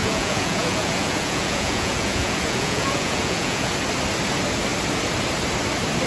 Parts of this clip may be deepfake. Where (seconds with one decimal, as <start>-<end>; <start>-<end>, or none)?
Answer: 0.0-3.7